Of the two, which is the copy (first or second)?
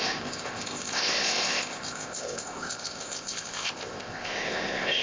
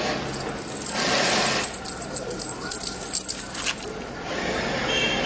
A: first